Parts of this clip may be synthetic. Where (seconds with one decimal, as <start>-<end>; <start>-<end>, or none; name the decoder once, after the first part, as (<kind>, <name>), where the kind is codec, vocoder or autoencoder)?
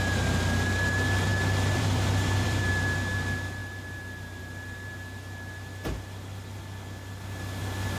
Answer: 1.3-2.7 (vocoder, BigVGAN v2)